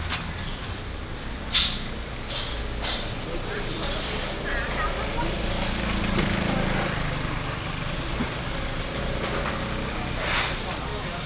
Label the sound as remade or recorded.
recorded